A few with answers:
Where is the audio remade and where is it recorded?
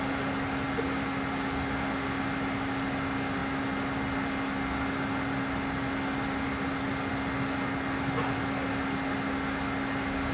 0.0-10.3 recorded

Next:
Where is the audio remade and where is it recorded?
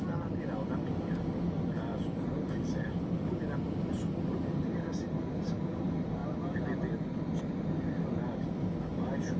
0.0-9.4 recorded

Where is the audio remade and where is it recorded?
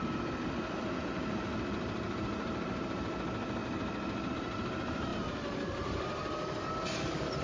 0.0-7.4 recorded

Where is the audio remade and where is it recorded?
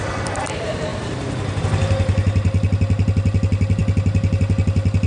0.0-5.1 recorded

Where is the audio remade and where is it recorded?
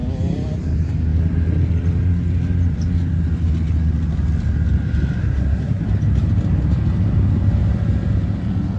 0.0-5.2 recorded; 5.2-5.8 remade; 5.8-8.8 recorded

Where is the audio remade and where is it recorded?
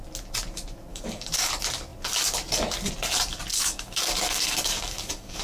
0.0-0.9 recorded; 0.9-1.5 remade; 1.5-3.5 recorded; 3.5-5.4 remade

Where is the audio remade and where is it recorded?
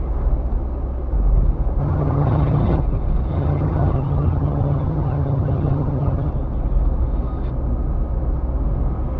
0.0-1.8 recorded; 1.8-2.8 remade; 2.8-3.3 recorded; 3.3-6.3 remade; 6.3-9.2 recorded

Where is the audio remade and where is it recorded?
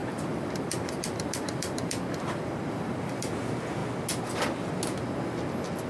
0.0-3.3 remade; 3.3-5.9 recorded